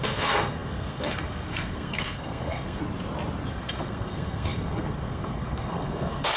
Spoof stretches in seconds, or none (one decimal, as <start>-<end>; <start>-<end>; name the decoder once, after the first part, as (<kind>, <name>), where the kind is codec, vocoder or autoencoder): 0.0-2.8 (codec, SNAC); 3.5-6.4